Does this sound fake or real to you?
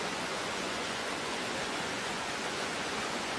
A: fake